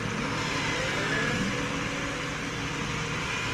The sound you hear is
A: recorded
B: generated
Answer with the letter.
A